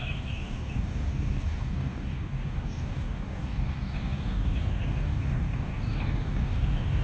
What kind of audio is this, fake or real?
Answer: fake